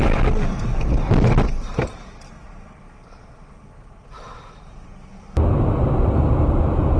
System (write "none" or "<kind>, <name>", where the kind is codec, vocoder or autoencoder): none